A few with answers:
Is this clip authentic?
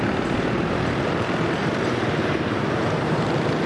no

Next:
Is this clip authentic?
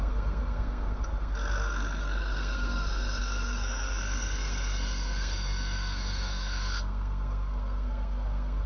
no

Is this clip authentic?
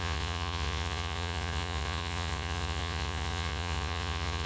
no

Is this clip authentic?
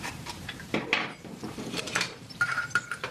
no